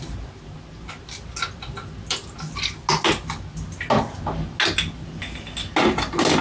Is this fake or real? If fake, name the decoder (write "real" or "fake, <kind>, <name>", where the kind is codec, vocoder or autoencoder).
real